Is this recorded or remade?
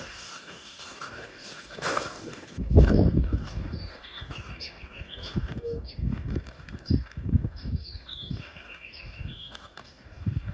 remade